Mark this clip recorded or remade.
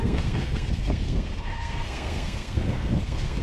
remade